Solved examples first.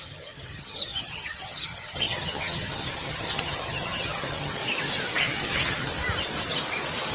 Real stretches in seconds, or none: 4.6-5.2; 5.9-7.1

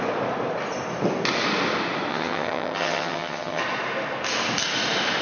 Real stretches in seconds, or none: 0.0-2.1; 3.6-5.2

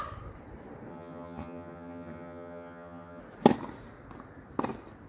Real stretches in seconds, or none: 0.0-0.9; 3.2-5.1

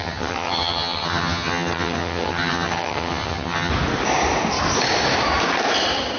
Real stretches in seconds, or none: 3.7-6.2